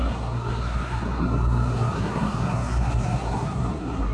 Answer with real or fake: fake